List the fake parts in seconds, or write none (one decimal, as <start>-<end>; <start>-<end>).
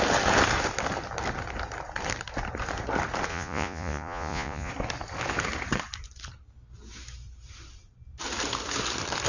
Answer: 3.3-4.7